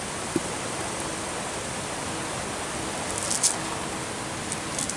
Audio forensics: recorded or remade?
recorded